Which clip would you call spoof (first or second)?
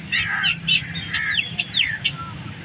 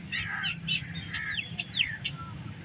second